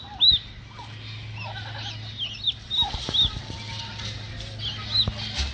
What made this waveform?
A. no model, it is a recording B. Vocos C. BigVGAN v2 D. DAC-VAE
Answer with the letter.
A